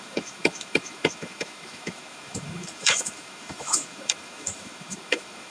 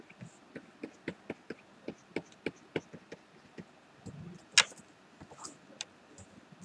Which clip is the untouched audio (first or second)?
second